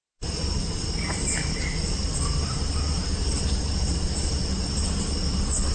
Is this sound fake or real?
real